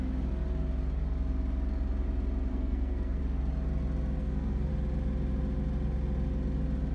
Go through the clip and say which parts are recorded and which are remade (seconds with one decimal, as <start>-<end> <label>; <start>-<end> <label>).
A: 0.0-2.5 recorded; 2.5-3.2 remade; 3.2-4.2 recorded; 4.2-4.7 remade; 4.7-6.9 recorded